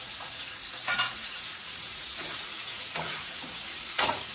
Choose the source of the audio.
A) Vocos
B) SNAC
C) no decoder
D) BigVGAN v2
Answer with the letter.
A